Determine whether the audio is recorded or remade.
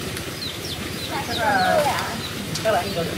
remade